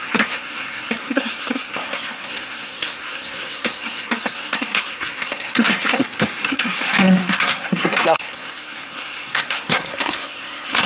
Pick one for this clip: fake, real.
fake